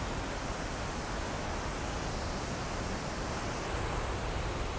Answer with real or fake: real